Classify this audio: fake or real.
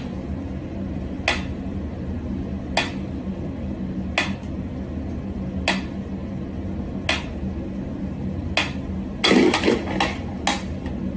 real